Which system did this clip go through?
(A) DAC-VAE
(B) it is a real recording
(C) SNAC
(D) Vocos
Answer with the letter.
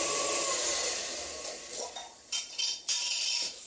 B